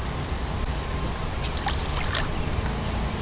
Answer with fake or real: real